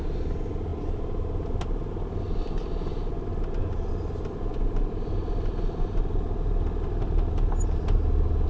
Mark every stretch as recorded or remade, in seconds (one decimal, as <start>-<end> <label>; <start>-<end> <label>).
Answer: 0.0-8.5 recorded